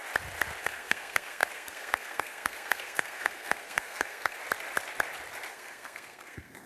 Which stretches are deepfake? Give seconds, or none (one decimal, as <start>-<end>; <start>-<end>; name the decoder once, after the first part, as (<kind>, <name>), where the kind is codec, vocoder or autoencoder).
0.6-4.4 (codec, SNAC); 5.5-6.7